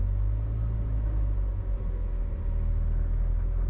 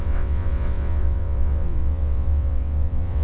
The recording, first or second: first